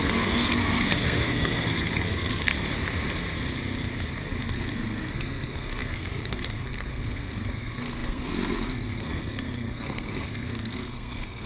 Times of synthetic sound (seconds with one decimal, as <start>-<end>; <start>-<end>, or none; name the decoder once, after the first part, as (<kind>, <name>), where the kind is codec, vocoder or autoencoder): 0.0-2.5 (codec, SNAC); 4.4-11.5